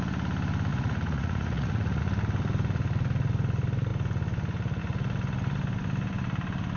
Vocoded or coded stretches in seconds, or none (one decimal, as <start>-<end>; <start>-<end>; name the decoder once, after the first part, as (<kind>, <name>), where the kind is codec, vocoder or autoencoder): 0.7-2.0 (vocoder, Vocos)